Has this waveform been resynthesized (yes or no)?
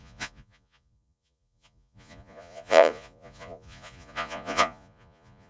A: yes